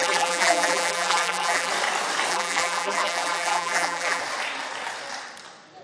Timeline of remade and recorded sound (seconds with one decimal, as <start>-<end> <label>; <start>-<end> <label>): 0.0-1.7 remade; 1.7-2.3 recorded; 2.3-4.2 remade; 4.2-5.8 recorded